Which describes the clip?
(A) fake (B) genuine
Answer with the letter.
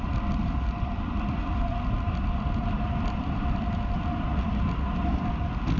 A